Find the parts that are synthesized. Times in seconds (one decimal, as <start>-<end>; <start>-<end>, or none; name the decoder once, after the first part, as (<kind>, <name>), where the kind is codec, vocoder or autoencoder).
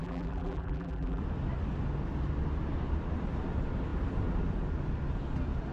0.0-1.2 (vocoder, BigVGAN v2)